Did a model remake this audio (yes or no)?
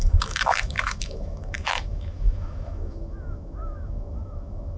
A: yes